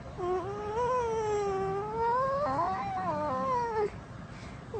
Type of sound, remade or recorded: recorded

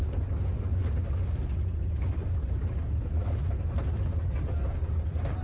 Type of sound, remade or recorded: recorded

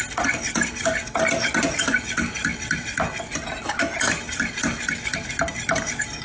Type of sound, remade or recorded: recorded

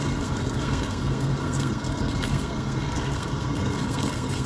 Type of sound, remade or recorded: remade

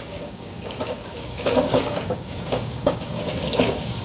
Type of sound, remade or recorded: remade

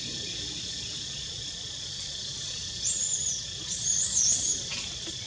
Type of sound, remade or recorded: recorded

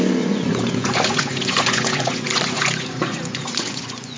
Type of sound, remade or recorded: remade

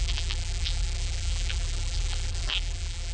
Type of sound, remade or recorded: remade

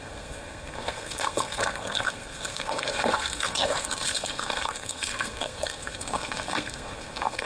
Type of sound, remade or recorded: remade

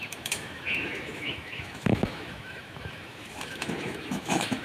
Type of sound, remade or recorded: remade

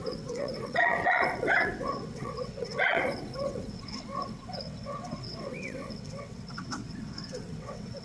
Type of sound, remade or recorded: remade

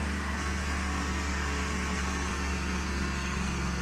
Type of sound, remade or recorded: remade